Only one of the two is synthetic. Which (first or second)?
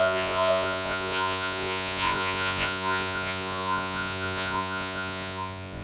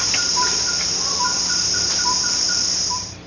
first